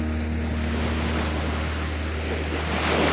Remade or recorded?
recorded